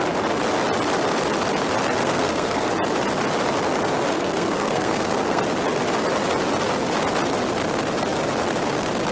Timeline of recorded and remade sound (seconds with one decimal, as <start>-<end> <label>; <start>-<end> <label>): 0.0-2.0 recorded; 2.0-2.7 remade; 2.7-4.1 recorded; 4.1-5.4 remade; 5.4-9.1 recorded